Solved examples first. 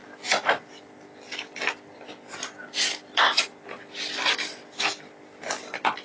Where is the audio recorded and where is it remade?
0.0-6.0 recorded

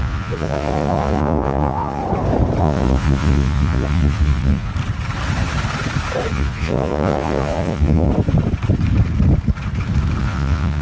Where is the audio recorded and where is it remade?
0.0-2.0 remade; 2.0-2.6 recorded; 2.6-4.7 remade; 4.7-6.3 recorded; 6.3-8.1 remade; 8.1-10.2 recorded; 10.2-10.8 remade

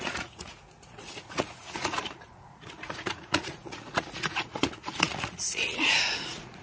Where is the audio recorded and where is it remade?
0.0-6.6 remade

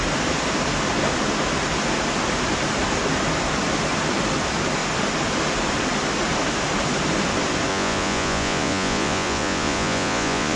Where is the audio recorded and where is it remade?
0.0-7.7 recorded; 7.7-10.6 remade

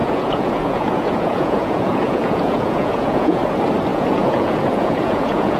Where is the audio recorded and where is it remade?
0.0-3.4 remade; 3.4-3.9 recorded; 3.9-5.6 remade